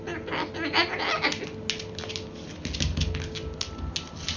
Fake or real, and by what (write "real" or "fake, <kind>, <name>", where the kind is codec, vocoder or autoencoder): real